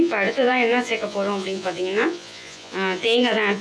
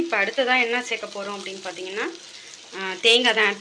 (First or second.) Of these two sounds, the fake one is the first